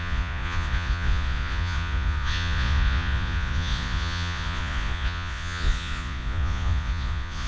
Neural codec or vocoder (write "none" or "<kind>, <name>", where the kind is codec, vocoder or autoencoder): vocoder, Vocos